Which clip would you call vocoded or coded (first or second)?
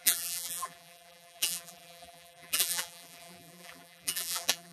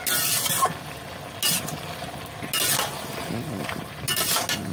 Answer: first